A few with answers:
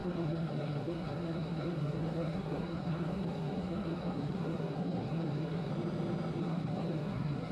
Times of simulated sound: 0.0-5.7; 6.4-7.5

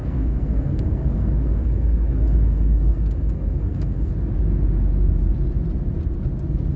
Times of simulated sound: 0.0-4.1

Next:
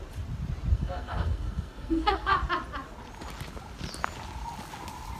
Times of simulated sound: 0.7-2.4